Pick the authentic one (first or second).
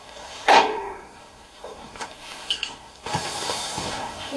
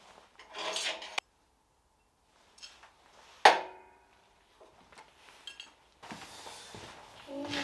second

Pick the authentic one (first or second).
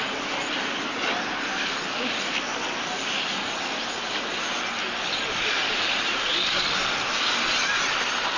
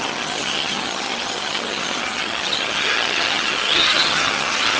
first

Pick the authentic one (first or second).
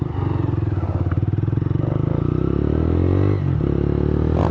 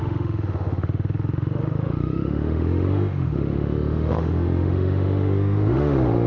first